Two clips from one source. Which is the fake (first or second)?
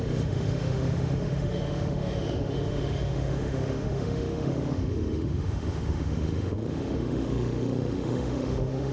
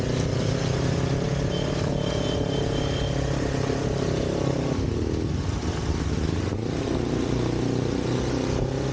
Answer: first